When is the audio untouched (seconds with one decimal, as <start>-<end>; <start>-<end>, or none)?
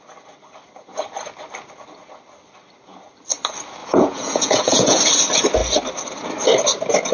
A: 0.0-3.8; 5.0-7.1